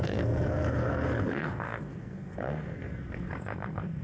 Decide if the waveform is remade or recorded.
remade